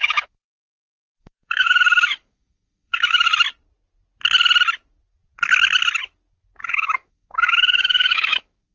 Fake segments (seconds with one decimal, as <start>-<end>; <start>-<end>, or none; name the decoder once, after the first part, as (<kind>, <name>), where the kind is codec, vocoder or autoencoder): 0.0-3.3 (autoencoder, DAC-VAE); 6.7-8.7